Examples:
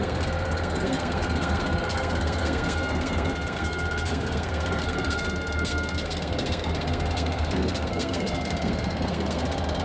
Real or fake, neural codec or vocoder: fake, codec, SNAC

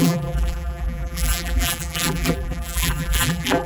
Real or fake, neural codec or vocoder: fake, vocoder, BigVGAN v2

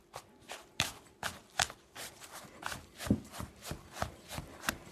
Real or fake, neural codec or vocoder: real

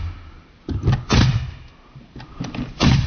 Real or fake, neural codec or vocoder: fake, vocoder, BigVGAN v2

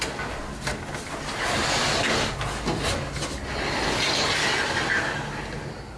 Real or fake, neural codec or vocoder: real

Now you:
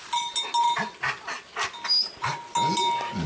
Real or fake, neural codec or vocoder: real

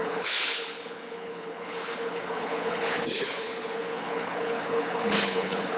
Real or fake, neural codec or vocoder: fake, codec, HILCodec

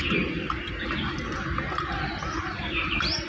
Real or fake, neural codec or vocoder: real